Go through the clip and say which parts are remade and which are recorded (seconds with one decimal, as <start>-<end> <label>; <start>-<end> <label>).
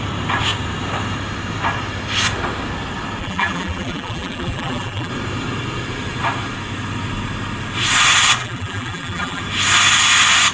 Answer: 0.0-3.2 recorded; 3.2-5.1 remade; 5.1-8.4 recorded; 8.4-9.4 remade; 9.4-10.5 recorded